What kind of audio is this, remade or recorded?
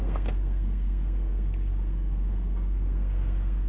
remade